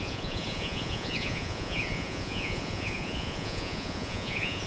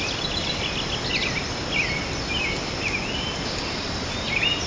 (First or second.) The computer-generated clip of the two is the first